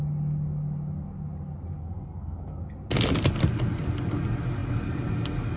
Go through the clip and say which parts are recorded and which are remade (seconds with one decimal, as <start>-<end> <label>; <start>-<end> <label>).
0.0-1.8 recorded; 1.8-2.6 remade; 2.6-5.6 recorded